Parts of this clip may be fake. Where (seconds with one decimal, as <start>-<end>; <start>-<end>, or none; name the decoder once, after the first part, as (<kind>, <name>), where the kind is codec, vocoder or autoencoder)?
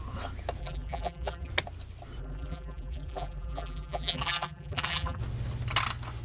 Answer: 0.6-1.5 (vocoder, BigVGAN v2); 2.2-5.2